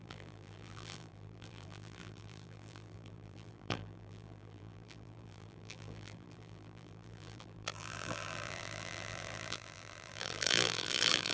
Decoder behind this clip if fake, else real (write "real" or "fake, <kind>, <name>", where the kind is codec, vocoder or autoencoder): fake, vocoder, BigVGAN v2